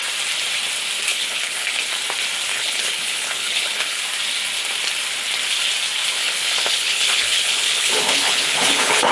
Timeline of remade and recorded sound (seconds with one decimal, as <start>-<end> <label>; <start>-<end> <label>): 0.0-1.1 recorded; 1.1-1.9 remade; 1.9-2.5 recorded; 2.5-4.0 remade; 4.0-6.2 recorded; 6.2-9.1 remade